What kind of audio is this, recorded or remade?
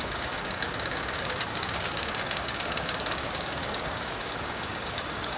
remade